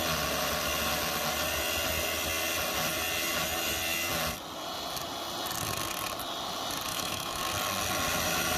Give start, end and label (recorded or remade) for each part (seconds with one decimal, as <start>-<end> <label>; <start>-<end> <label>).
0.0-6.9 recorded; 6.9-7.4 remade; 7.4-8.6 recorded